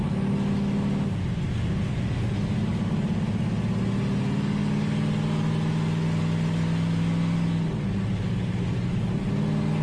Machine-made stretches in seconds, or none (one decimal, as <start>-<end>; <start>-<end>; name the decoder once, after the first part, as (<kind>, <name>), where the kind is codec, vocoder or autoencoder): none